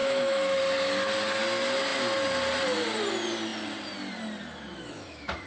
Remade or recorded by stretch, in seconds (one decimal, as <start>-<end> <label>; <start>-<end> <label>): 0.0-0.6 remade; 0.6-4.7 recorded; 4.7-5.5 remade